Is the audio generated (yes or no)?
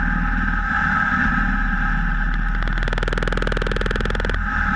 no